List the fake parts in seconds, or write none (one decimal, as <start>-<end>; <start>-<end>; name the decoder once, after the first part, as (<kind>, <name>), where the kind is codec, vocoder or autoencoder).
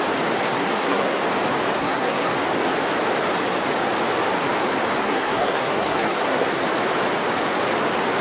0.4-1.2 (codec, SNAC); 1.8-2.3; 5.0-6.6